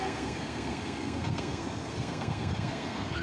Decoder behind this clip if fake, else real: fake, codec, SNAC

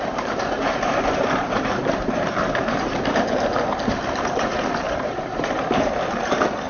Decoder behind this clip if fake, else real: fake, vocoder, BigVGAN v2